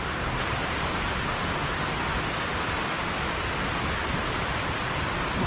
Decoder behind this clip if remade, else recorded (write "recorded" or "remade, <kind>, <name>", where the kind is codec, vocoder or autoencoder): recorded